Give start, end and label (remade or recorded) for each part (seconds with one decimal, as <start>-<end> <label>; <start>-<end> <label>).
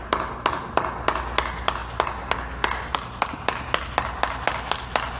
0.0-5.2 recorded